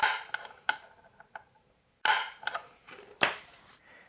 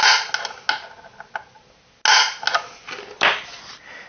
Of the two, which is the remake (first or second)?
first